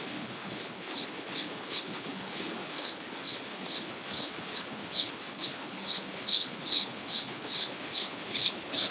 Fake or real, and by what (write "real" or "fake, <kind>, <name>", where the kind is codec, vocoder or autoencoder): fake, codec, HILCodec